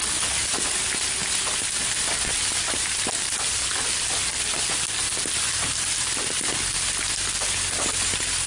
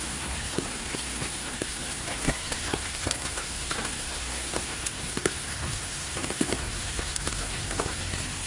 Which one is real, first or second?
first